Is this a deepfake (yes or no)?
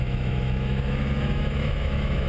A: yes